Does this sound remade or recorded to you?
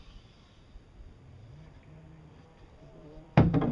recorded